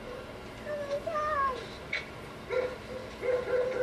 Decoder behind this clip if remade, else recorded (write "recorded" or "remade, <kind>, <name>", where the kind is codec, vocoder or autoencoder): recorded